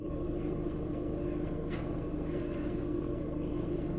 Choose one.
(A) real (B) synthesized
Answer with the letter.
B